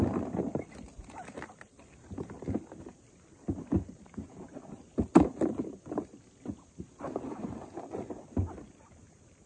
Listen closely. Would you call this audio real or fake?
real